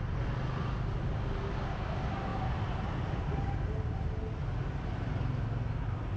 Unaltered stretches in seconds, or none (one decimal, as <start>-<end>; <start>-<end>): 0.0-6.2

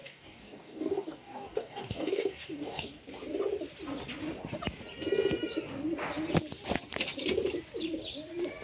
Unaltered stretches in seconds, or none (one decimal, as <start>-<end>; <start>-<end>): 3.0-8.6

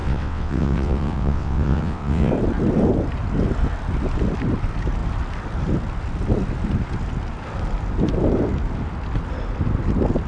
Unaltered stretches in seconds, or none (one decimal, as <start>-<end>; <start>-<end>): 2.3-10.3

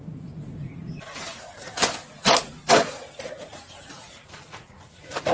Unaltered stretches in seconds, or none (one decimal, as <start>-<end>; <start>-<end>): 1.8-3.2

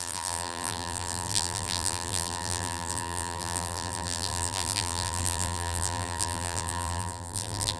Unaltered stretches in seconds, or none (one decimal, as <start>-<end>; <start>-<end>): none

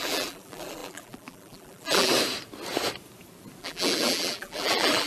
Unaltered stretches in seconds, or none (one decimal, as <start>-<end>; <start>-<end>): 2.1-3.6

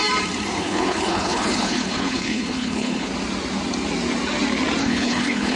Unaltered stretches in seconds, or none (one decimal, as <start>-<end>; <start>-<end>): 0.0-0.6; 3.1-4.8

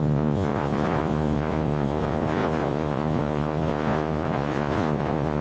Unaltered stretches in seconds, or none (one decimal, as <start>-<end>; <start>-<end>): none